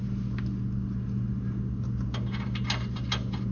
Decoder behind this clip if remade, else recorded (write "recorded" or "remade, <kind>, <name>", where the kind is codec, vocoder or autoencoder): recorded